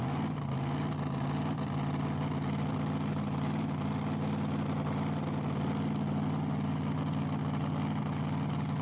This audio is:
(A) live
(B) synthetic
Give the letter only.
A